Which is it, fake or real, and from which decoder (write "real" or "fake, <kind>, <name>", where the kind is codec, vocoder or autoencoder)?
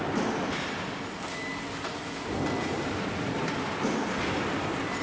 real